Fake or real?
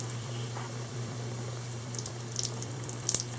fake